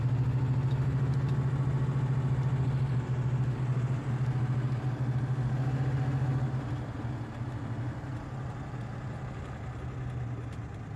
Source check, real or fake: real